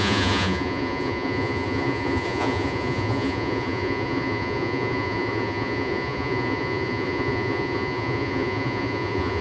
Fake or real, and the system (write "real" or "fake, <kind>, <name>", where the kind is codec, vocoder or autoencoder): fake, vocoder, Vocos